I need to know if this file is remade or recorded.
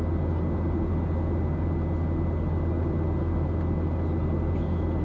recorded